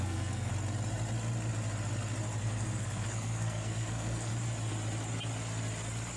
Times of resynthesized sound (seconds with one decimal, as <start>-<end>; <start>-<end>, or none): 0.0-0.5; 2.4-4.3